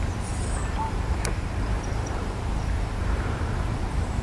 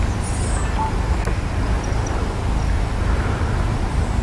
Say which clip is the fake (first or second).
first